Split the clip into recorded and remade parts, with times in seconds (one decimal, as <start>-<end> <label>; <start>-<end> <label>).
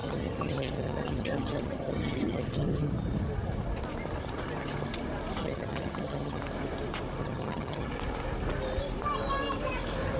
0.0-2.9 remade; 2.9-5.4 recorded; 5.4-6.4 remade; 6.4-7.2 recorded; 7.2-7.9 remade; 7.9-10.2 recorded